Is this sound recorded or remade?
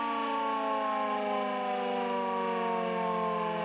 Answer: recorded